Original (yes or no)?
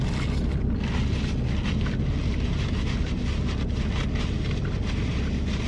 yes